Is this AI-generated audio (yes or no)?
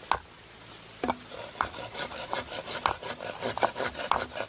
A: no